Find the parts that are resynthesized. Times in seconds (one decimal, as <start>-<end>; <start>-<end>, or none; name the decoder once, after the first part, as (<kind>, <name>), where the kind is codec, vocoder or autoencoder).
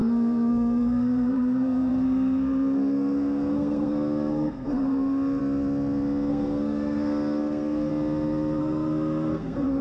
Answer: 0.0-5.4 (codec, SNAC); 6.3-7.9; 8.6-9.8